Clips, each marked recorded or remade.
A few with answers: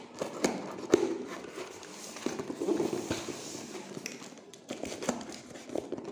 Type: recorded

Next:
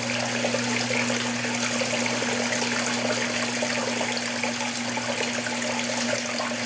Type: recorded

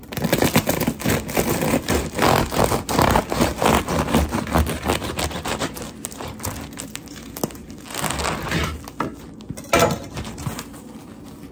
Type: recorded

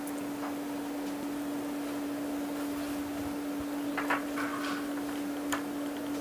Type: recorded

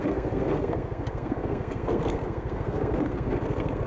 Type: remade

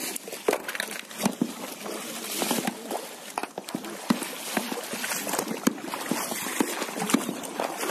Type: recorded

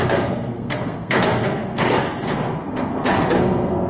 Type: remade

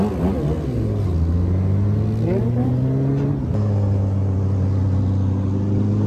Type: recorded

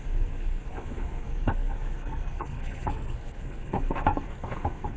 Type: remade